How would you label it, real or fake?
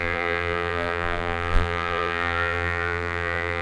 fake